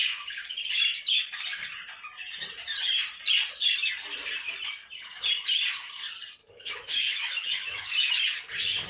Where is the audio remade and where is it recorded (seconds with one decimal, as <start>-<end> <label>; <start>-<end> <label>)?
0.0-6.4 recorded; 6.4-8.1 remade; 8.1-8.9 recorded